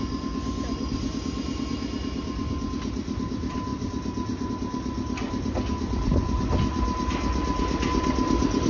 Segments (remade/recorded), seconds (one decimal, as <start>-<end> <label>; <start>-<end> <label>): 0.0-8.7 recorded